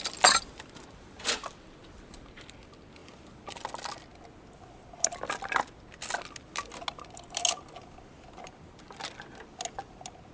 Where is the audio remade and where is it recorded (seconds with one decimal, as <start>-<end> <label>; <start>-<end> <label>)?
0.0-10.3 recorded